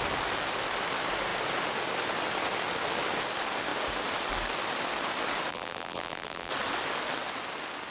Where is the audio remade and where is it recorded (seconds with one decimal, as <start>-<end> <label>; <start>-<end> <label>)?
0.0-5.5 recorded; 5.5-6.5 remade; 6.5-7.9 recorded